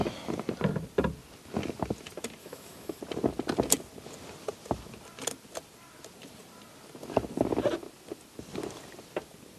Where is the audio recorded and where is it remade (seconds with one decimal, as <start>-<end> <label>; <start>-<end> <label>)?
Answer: 0.0-2.4 recorded; 2.4-3.0 remade; 3.0-9.6 recorded